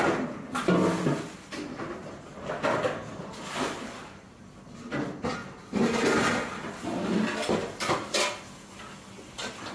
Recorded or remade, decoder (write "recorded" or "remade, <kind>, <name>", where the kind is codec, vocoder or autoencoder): recorded